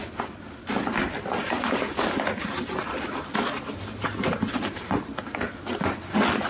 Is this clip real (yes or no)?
yes